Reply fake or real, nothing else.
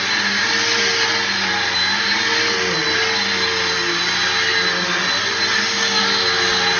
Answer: real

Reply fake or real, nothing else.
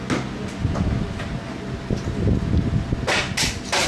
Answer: real